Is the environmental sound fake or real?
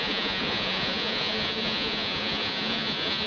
fake